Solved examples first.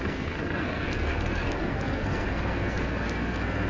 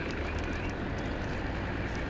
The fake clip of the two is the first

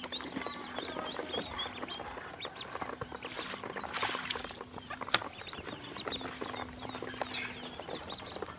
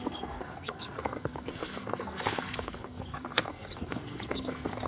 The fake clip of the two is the second